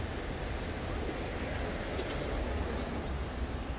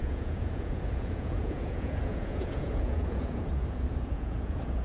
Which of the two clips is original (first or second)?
first